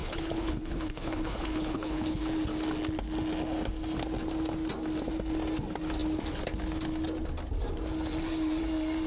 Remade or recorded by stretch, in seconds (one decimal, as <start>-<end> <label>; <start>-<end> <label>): 0.0-2.2 remade; 2.2-9.1 recorded